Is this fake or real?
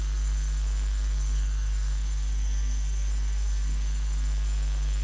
fake